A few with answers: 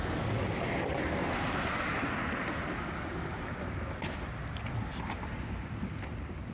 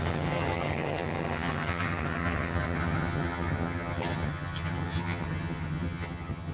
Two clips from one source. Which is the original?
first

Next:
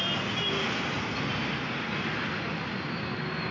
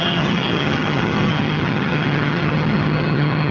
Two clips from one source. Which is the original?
first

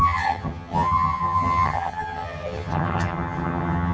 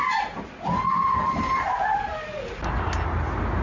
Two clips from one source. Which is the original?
second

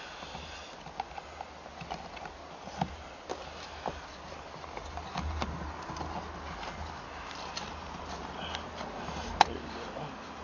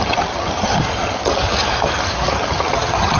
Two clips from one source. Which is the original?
first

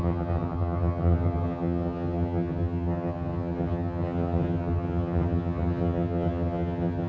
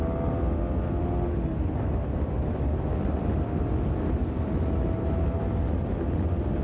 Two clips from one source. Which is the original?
second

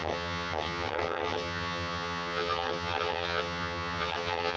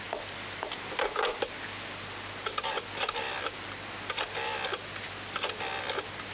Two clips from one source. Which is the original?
second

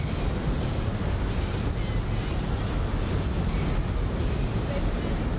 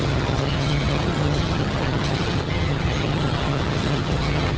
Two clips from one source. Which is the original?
first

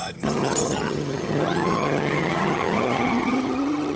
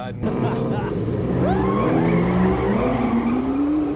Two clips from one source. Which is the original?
second